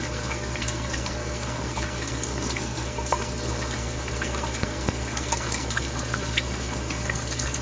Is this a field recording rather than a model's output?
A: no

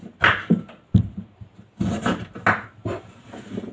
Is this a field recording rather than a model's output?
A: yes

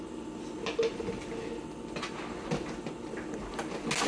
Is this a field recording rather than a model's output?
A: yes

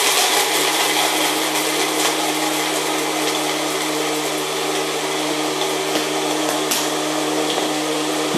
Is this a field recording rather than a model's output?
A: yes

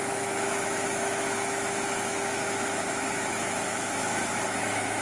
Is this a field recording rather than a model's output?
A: no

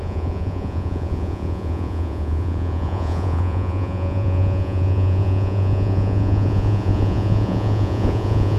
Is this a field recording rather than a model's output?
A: no